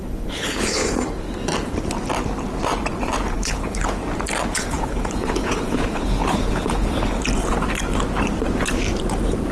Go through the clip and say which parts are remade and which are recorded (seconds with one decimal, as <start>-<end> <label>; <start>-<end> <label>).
0.0-0.8 remade; 0.8-3.3 recorded; 3.3-4.0 remade; 4.0-4.5 recorded; 4.5-7.2 remade; 7.2-9.5 recorded